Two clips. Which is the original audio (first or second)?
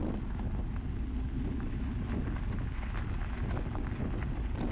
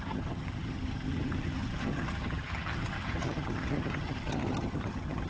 first